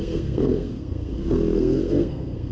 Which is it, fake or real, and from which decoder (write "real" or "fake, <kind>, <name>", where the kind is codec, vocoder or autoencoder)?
fake, codec, SNAC